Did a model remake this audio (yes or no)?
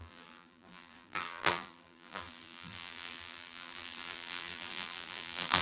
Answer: yes